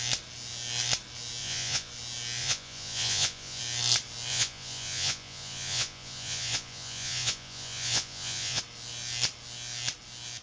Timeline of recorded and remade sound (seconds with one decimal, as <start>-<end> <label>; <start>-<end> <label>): 0.0-1.4 recorded; 1.4-1.9 remade; 1.9-2.4 recorded; 2.4-3.6 remade; 3.6-4.3 recorded; 4.3-8.6 remade; 8.6-10.4 recorded